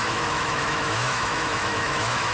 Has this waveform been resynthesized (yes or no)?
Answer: yes